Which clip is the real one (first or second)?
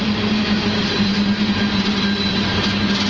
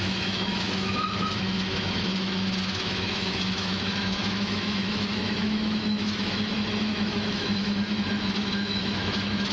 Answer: first